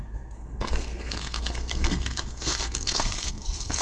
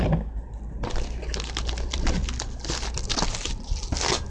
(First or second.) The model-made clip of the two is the first